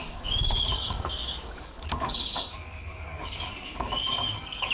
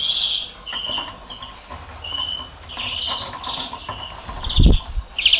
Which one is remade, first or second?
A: first